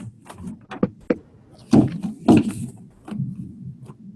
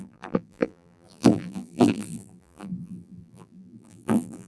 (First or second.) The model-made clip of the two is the second